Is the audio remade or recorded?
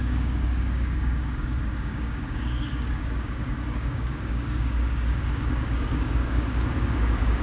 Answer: remade